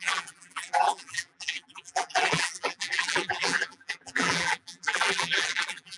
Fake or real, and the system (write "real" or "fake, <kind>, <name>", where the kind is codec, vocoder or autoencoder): fake, vocoder, BigVGAN v2